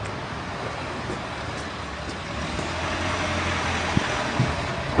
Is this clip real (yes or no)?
yes